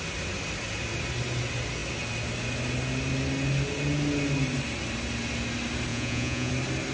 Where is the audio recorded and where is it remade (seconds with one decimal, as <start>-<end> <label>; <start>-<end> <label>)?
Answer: 0.0-5.9 recorded; 5.9-6.5 remade; 6.5-6.9 recorded